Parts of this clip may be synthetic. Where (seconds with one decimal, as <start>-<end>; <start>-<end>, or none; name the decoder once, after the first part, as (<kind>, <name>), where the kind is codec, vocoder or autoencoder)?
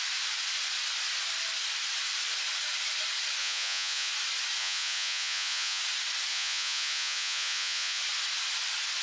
3.4-4.1 (vocoder, Vocos); 4.6-5.8; 6.3-8.0